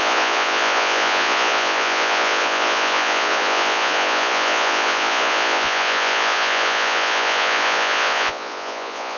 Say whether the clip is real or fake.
fake